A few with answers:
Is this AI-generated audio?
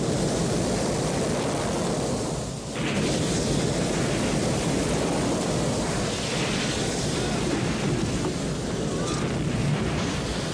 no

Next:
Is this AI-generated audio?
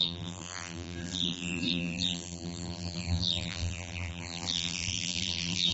yes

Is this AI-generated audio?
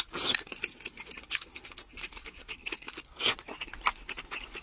no